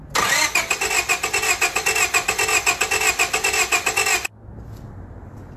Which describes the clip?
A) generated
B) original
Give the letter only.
B